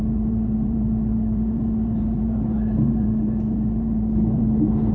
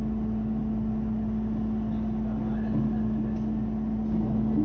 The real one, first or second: second